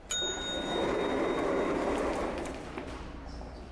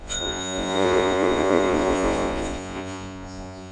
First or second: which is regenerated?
second